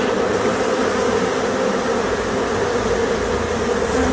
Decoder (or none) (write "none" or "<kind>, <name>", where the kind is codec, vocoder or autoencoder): none